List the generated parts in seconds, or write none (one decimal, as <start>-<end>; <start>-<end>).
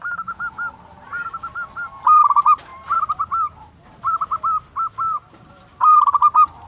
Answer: 2.7-6.7